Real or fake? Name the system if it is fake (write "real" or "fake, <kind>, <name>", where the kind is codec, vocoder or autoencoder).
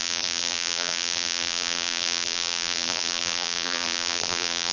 fake, vocoder, BigVGAN v2